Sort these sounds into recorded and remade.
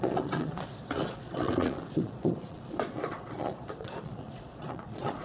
remade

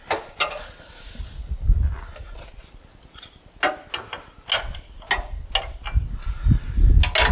recorded